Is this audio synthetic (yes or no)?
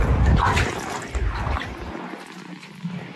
no